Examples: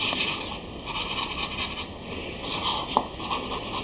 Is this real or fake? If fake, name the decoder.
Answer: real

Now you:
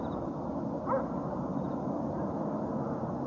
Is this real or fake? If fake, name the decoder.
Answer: real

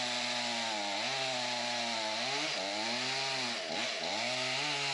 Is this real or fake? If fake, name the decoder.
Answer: real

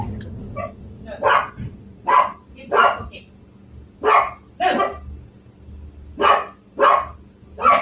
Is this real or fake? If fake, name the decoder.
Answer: real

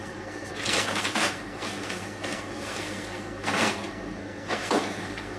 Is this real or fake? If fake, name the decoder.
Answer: fake, codec, SNAC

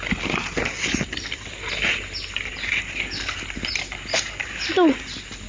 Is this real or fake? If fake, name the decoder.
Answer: real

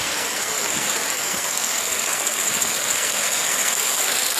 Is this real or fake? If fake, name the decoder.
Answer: fake, codec, SNAC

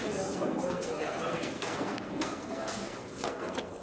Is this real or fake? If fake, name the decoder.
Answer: fake, codec, SNAC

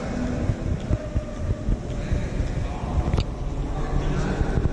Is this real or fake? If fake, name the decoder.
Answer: real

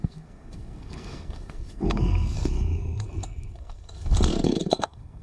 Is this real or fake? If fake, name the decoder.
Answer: fake, codec, SNAC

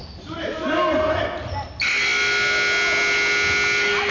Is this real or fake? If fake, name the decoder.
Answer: real